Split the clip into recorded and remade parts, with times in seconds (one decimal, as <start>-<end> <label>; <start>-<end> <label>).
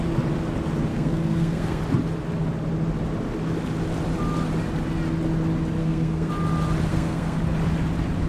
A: 0.0-0.9 recorded; 0.9-1.8 remade; 1.8-5.8 recorded; 5.8-6.3 remade; 6.3-6.9 recorded; 6.9-7.4 remade; 7.4-8.3 recorded